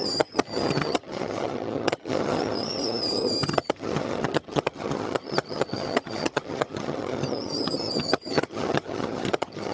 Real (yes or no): no